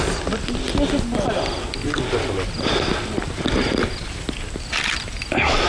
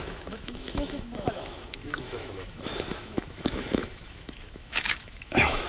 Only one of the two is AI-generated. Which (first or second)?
second